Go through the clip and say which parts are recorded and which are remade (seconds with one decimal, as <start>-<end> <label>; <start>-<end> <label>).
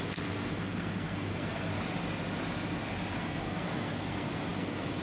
0.0-1.7 remade; 1.7-3.1 recorded; 3.1-5.0 remade